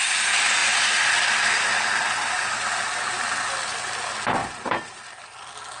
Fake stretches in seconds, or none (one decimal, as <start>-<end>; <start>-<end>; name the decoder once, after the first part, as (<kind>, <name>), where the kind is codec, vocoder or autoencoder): 4.4-5.2 (vocoder, BigVGAN v2)